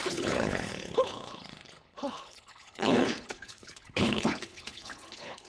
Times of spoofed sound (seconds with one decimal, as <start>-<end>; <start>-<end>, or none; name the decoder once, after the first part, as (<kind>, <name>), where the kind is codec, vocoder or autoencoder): 0.0-5.5 (codec, HILCodec)